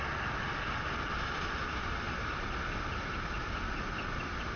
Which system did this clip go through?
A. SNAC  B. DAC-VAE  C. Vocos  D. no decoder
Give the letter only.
D